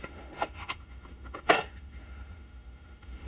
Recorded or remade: remade